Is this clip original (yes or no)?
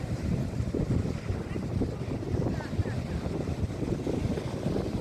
yes